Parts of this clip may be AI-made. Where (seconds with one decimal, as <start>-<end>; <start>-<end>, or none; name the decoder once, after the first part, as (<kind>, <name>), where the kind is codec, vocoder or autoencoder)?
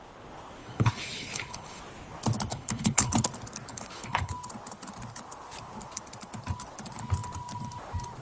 0.6-1.8 (codec, HILCodec); 2.5-3.1; 3.7-4.3